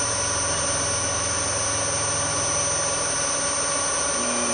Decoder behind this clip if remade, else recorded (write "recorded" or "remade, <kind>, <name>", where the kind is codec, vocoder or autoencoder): recorded